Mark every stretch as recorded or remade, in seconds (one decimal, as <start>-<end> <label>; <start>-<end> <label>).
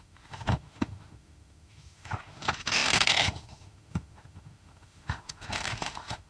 0.0-6.3 remade